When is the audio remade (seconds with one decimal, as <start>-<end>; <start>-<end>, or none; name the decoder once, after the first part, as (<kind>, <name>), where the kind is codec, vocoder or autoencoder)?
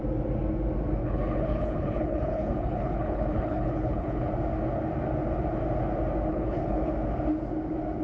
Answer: 1.0-4.3 (codec, HILCodec); 6.3-6.9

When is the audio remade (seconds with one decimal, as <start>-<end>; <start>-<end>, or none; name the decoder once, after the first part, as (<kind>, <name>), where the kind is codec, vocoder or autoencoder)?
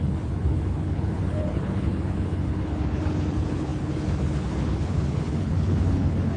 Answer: 0.0-6.4 (codec, HILCodec)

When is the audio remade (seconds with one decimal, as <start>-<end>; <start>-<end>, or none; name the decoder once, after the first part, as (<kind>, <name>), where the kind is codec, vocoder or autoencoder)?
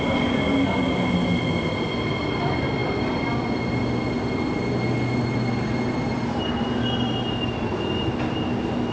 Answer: none